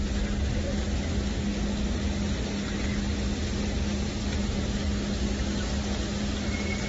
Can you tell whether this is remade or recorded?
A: recorded